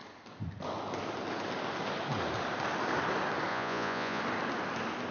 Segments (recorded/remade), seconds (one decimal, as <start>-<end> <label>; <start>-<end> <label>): 0.0-3.5 recorded; 3.5-4.2 remade; 4.2-5.1 recorded